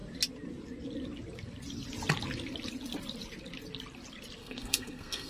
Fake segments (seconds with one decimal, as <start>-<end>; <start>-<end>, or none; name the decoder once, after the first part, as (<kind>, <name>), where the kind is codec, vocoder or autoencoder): 4.4-5.3 (codec, SNAC)